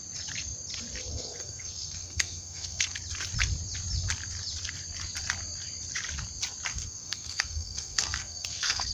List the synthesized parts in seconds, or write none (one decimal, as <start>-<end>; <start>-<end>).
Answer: 1.1-3.0; 6.7-8.9

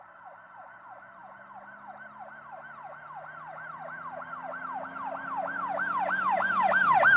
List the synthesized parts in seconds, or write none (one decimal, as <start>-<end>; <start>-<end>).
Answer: none

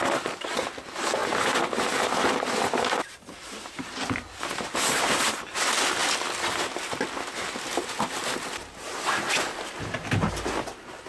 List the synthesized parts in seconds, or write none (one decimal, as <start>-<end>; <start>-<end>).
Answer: none

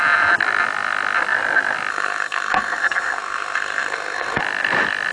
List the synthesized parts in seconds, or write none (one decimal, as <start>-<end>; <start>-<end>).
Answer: 1.9-4.4

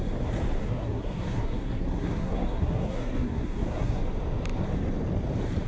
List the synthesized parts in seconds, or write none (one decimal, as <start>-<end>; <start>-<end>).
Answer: 0.6-4.0